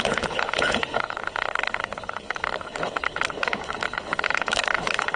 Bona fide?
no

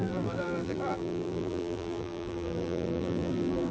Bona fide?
no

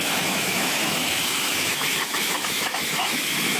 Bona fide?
no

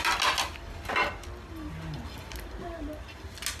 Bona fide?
yes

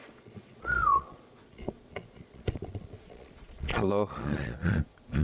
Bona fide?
no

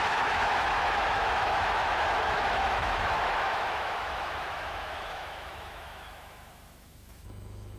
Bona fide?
no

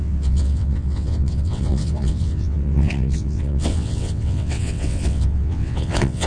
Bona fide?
no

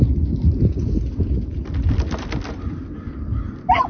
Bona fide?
yes